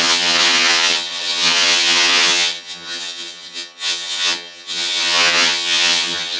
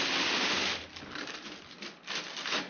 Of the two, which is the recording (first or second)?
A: second